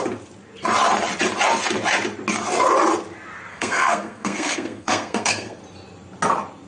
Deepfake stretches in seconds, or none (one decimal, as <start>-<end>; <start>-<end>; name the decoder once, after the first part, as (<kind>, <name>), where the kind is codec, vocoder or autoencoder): 3.5-5.6 (codec, SNAC)

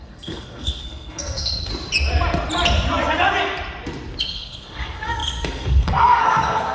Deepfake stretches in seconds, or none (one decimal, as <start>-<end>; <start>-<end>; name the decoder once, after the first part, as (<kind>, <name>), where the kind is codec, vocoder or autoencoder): 0.0-1.7 (codec, SNAC); 4.2-6.7

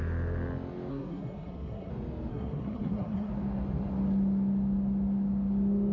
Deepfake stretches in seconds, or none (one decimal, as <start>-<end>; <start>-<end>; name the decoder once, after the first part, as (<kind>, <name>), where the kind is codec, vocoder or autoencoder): 0.9-1.9 (codec, SNAC); 2.3-3.3

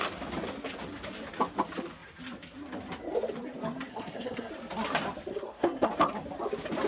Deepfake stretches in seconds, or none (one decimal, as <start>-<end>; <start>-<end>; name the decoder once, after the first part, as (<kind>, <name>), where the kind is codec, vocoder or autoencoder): 3.9-4.5 (codec, SNAC); 5.3-5.9

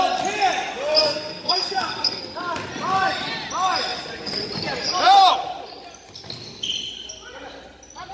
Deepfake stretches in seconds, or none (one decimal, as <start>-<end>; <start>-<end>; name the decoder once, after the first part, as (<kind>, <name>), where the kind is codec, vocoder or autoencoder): 1.0-2.2 (codec, SNAC)

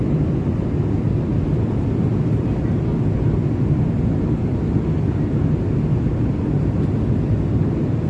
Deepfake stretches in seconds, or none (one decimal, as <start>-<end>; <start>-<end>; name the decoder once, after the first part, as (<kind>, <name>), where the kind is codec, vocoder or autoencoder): none